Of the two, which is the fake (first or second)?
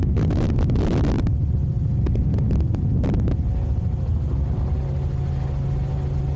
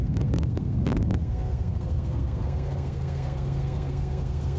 second